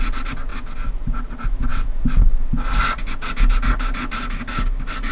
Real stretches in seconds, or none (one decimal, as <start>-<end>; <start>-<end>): 0.0-5.1